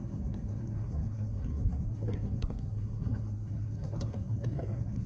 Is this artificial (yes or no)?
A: yes